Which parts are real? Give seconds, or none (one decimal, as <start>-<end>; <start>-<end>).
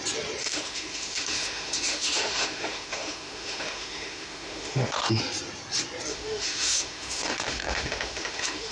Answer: 0.0-0.4; 5.2-6.1